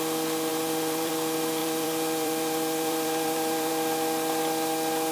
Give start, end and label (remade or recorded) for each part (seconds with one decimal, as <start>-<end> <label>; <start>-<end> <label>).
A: 0.0-0.5 recorded; 0.5-1.1 remade; 1.1-1.6 recorded; 1.6-3.7 remade; 3.7-5.1 recorded